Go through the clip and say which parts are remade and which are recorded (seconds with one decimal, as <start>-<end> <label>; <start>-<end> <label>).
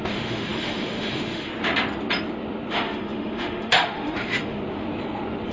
0.0-1.5 remade; 1.5-2.7 recorded; 2.7-4.6 remade; 4.6-5.5 recorded